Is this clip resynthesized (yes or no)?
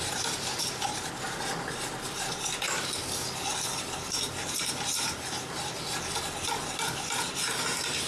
yes